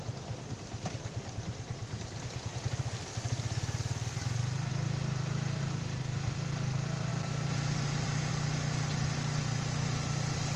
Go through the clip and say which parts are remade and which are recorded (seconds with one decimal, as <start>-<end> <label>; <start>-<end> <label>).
0.0-7.1 recorded; 7.1-8.3 remade; 8.3-10.6 recorded